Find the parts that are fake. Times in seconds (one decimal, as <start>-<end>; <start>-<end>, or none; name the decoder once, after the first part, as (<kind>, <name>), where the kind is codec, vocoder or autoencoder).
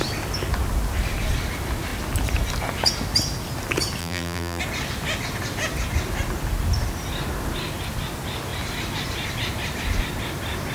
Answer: 4.0-4.6 (vocoder, BigVGAN v2)